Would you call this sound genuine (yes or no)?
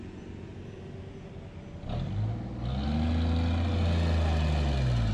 yes